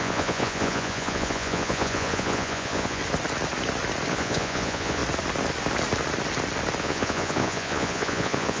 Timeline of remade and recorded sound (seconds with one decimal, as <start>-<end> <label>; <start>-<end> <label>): 0.0-3.0 remade; 3.0-4.1 recorded; 4.1-5.0 remade; 5.0-6.8 recorded; 6.8-8.6 remade